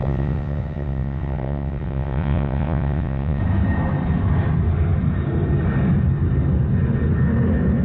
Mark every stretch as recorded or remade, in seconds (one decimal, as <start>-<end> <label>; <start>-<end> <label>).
0.0-3.4 remade; 3.4-7.8 recorded